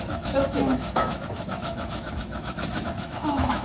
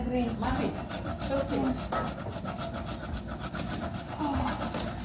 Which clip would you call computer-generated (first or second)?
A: first